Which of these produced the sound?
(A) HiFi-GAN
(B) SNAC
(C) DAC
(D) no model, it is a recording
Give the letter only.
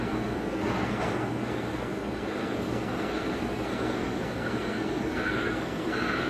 B